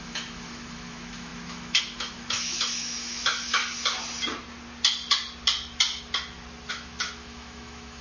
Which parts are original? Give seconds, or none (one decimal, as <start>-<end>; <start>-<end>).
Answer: 3.6-6.7